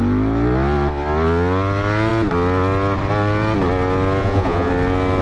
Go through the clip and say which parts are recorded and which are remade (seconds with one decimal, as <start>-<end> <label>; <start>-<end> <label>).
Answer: 0.0-4.2 recorded; 4.2-4.7 remade; 4.7-5.2 recorded